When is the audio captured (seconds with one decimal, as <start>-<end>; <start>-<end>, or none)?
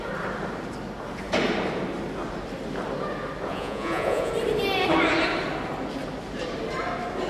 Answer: 0.0-3.5; 4.3-7.3